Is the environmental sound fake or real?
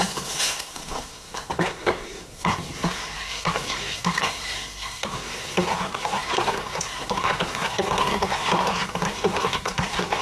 fake